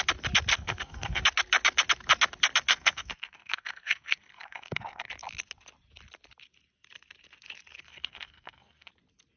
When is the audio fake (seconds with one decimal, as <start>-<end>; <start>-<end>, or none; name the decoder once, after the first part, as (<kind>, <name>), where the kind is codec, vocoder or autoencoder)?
0.5-1.2 (codec, SNAC); 2.7-5.1; 7.8-8.9

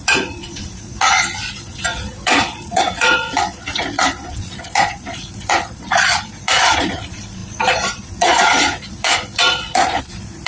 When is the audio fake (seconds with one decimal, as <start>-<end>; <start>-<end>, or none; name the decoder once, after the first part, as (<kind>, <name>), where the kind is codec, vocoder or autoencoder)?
0.0-10.5 (vocoder, Vocos)

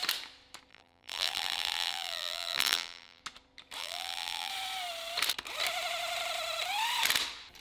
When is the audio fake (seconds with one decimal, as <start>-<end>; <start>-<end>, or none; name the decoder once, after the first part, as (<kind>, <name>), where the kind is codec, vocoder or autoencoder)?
0.7-3.2 (vocoder, BigVGAN v2); 3.8-4.5

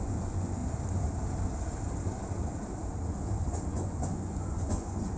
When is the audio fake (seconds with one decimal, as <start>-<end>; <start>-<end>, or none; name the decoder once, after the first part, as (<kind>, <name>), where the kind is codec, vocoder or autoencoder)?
0.0-0.6 (vocoder, Vocos); 3.7-5.2

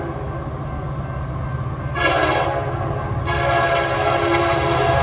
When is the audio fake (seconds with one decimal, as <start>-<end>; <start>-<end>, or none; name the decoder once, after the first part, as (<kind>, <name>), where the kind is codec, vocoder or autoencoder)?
none

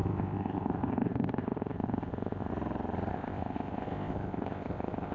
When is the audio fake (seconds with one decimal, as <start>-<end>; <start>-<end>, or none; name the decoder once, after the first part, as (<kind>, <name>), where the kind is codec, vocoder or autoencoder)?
0.0-2.5 (codec, ZipCodec); 3.1-5.1

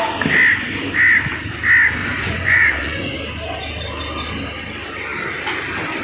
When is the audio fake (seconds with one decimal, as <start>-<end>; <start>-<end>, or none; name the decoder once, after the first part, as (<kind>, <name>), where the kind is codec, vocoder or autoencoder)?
2.0-3.1 (vocoder, Vocos)